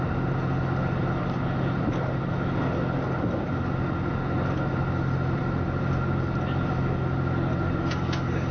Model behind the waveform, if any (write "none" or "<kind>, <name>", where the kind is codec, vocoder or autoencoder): none